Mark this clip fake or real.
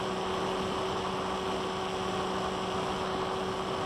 real